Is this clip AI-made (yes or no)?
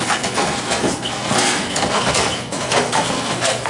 yes